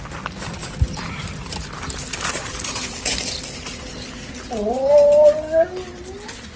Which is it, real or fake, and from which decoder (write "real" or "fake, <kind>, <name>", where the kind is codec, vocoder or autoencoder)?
real